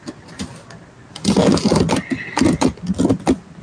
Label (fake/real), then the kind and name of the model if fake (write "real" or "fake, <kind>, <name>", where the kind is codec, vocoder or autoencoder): real